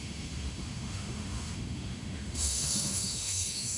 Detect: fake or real fake